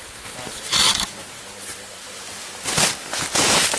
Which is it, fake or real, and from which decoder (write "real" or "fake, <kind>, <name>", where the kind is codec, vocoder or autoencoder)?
real